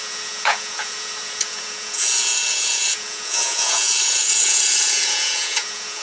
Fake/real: fake